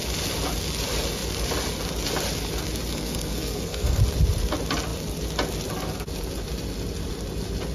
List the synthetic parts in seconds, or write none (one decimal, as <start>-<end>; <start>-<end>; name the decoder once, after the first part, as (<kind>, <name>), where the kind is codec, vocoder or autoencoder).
2.9-4.0 (codec, SNAC)